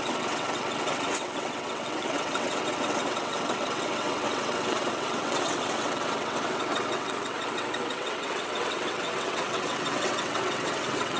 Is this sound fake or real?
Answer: fake